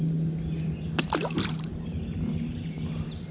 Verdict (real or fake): real